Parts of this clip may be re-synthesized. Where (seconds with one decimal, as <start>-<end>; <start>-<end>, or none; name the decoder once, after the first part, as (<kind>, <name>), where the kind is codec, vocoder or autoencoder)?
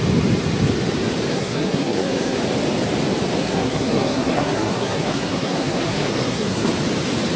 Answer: 1.3-2.4 (codec, SNAC); 3.4-6.7